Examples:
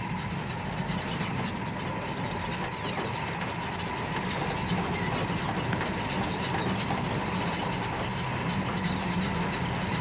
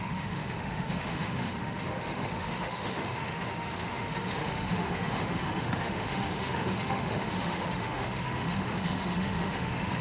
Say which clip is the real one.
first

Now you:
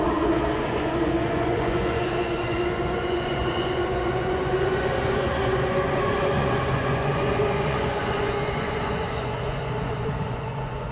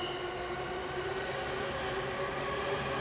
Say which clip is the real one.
second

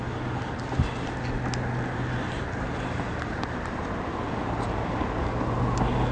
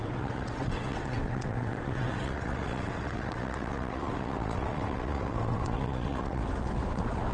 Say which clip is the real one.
first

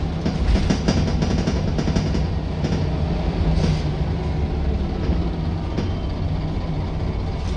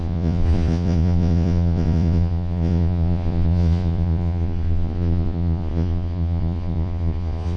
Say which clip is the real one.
first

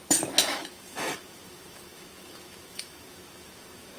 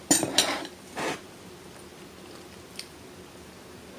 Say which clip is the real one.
second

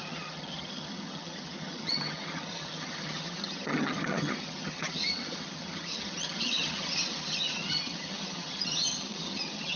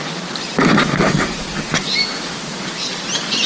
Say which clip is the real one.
second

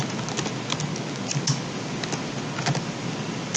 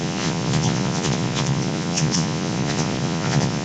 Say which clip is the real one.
first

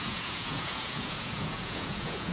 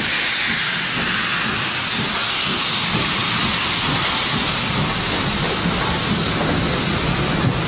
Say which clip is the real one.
second